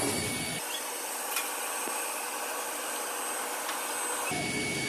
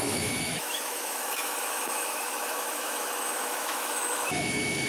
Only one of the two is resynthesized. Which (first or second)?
second